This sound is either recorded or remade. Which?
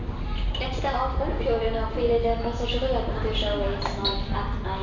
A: recorded